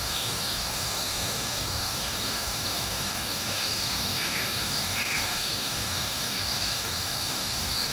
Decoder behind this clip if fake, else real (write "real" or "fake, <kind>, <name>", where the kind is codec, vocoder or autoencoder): fake, codec, DAC